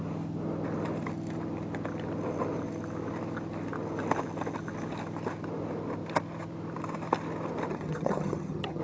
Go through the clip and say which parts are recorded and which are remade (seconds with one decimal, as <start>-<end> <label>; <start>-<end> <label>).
0.0-7.7 recorded; 7.7-8.8 remade